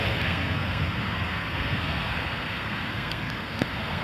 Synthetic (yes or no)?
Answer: yes